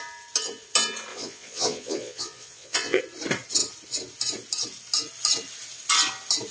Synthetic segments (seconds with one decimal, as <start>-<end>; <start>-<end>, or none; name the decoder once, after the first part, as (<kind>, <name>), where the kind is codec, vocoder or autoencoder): 1.1-3.0 (vocoder, Vocos)